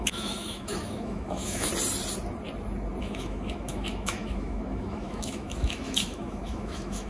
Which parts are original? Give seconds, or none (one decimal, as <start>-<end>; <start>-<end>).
1.7-3.0